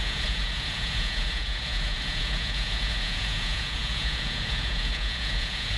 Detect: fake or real fake